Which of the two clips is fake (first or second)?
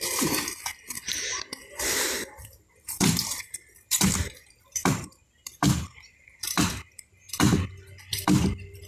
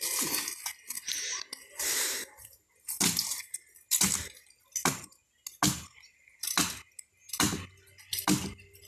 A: first